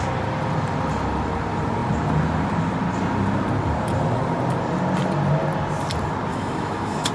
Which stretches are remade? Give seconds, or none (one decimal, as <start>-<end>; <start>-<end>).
6.3-7.1